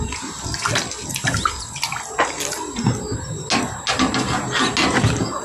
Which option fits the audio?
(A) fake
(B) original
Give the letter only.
B